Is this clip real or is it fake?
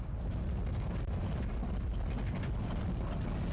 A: real